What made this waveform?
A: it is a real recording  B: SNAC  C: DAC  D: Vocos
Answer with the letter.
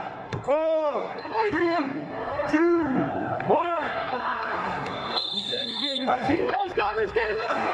B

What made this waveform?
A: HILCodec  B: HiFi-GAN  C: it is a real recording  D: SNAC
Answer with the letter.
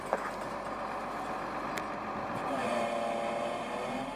C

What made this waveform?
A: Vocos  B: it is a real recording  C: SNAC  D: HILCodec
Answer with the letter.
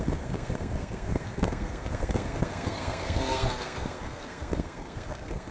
C